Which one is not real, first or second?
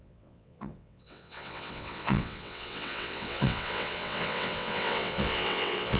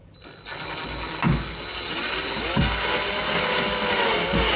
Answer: first